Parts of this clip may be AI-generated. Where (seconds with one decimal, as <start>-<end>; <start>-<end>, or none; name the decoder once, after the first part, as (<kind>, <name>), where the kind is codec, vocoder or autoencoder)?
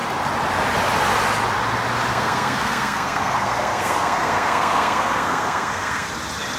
2.1-6.1 (codec, SNAC)